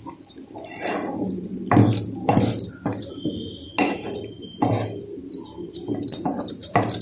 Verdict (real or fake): real